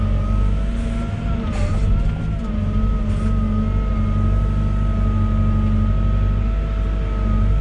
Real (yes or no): yes